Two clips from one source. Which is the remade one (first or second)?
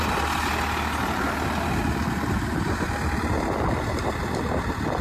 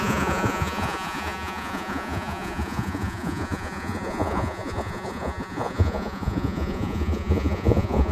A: second